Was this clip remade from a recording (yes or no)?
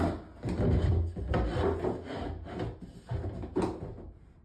no